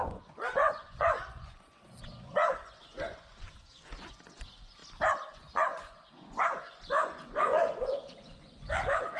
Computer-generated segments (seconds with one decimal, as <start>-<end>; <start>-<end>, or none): 0.0-4.8; 5.3-9.2